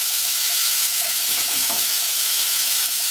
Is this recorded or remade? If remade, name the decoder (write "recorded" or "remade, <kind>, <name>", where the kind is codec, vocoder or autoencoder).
remade, autoencoder, DAC-VAE